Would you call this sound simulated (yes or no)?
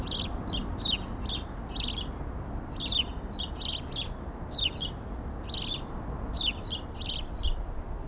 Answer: no